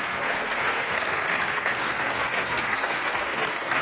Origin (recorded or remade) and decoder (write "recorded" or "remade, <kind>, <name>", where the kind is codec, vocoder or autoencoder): remade, codec, SNAC